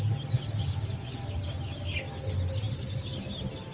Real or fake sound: real